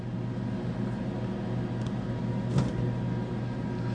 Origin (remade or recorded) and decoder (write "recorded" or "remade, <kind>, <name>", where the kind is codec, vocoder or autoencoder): recorded